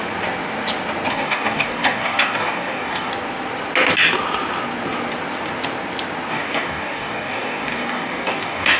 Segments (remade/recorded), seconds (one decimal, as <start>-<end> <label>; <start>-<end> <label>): 0.0-1.1 recorded; 1.1-3.1 remade; 3.1-6.3 recorded; 6.3-8.8 remade